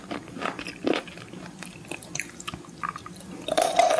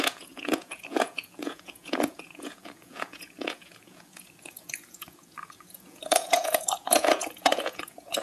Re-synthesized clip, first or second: second